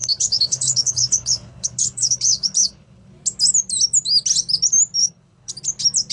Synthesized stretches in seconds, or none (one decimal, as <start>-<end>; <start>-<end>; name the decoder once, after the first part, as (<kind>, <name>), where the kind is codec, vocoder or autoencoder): 0.0-3.1 (codec, HILCodec); 5.0-5.5